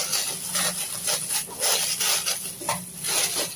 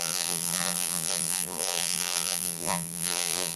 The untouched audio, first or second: first